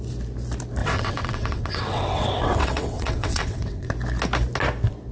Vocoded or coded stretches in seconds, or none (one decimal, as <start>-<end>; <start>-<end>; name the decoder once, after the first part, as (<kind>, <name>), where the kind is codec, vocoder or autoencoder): 0.8-3.9 (vocoder, WaveNeXt)